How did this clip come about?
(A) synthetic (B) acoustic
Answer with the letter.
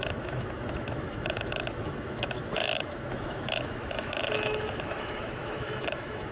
A